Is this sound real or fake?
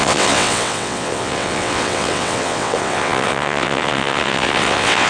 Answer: fake